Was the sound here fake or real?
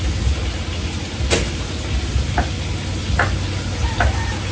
real